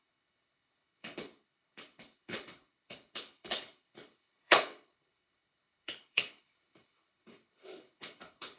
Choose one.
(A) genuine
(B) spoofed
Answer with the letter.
B